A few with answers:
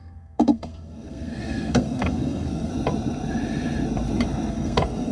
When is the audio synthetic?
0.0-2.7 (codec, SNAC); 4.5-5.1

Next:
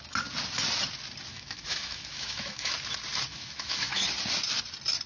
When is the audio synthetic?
1.3-2.7 (autoencoder, DAC-VAE); 3.3-4.0

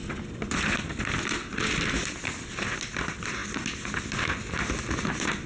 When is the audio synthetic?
none

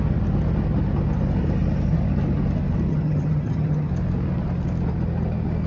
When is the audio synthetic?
2.9-3.9 (vocoder, HiFi-GAN)

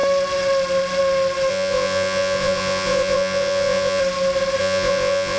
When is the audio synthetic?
1.5-4.0 (vocoder, Vocos); 4.6-5.4

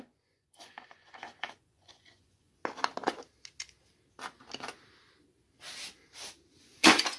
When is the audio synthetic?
0.0-2.6 (vocoder, Vocos); 6.6-7.2

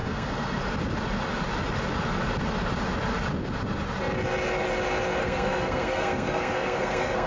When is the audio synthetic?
0.0-0.6 (codec, SNAC); 5.2-7.3

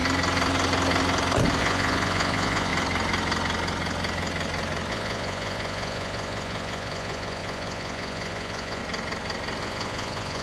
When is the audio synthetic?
1.6-2.7 (vocoder, Vocos); 4.9-8.8; 9.6-10.4